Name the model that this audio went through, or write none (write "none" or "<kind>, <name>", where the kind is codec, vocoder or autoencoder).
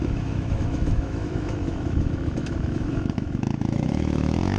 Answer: autoencoder, DAC-VAE